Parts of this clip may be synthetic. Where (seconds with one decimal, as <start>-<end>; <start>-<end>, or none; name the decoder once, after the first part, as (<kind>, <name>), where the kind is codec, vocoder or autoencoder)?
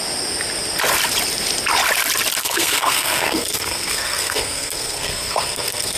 2.4-6.0 (codec, SNAC)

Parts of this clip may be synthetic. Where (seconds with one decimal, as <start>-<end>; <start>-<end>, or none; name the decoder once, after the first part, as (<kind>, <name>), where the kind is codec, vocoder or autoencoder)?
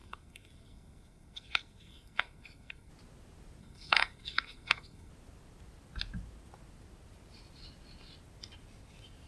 0.0-2.9 (codec, SNAC); 3.6-5.1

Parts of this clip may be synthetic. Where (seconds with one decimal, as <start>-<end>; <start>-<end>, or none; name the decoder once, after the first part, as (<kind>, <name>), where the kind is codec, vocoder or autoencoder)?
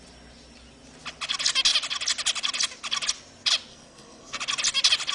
3.7-4.4 (codec, SNAC)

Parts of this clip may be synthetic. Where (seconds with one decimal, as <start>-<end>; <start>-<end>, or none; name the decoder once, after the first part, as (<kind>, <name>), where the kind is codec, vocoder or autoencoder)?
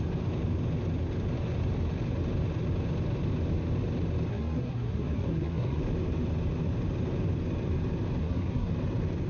4.3-5.8 (codec, SNAC); 8.2-8.7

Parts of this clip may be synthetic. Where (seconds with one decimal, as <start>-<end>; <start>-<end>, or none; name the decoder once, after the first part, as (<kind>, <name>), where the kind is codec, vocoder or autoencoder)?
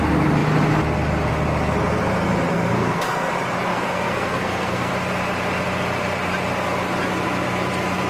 2.5-3.3 (codec, SNAC); 3.7-4.9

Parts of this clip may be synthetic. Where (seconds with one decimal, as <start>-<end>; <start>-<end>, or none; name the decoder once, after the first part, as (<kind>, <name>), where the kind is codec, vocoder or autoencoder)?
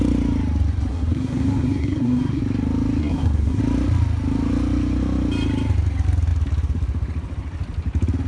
0.9-2.4 (codec, SNAC); 3.0-3.6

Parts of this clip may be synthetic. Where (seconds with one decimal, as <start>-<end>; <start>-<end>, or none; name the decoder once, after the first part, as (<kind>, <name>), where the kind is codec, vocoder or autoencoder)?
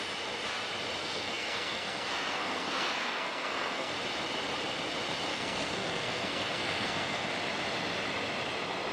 1.0-3.9 (codec, SNAC); 5.3-7.3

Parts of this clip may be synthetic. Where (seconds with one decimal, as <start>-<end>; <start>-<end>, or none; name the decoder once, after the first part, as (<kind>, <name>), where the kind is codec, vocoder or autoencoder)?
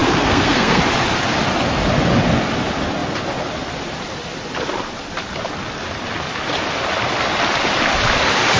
0.0-0.8 (codec, SNAC)